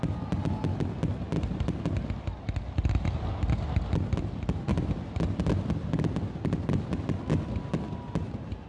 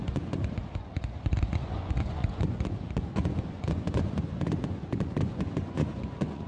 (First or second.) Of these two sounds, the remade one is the second